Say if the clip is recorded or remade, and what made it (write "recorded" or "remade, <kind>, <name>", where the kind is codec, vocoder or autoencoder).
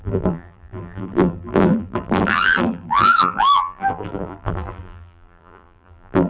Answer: remade, vocoder, BigVGAN v2